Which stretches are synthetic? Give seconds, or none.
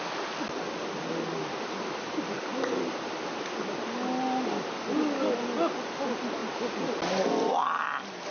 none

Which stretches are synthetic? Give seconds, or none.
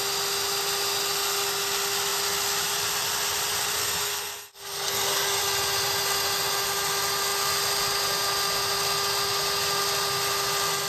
3.8-5.4 (codec, SNAC)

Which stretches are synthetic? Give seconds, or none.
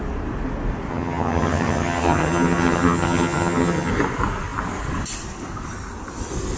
0.9-3.9 (vocoder, HiFi-GAN)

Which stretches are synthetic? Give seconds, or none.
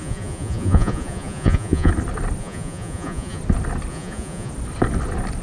0.0-1.9 (vocoder, Vocos); 2.4-3.4; 3.9-4.5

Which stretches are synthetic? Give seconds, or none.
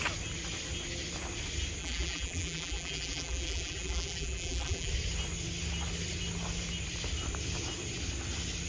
1.8-4.9 (vocoder, BigVGAN v2)